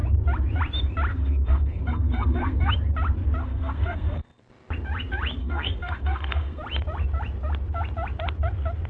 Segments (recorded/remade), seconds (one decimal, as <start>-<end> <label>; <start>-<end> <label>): 0.0-1.1 recorded; 1.1-2.7 remade; 2.7-3.4 recorded; 3.4-4.4 remade; 4.4-5.4 recorded; 5.4-6.6 remade; 6.6-8.9 recorded